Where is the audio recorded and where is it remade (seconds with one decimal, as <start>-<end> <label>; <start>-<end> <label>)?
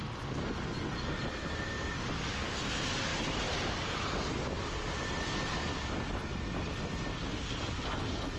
0.0-3.1 recorded; 3.1-3.7 remade; 3.7-8.4 recorded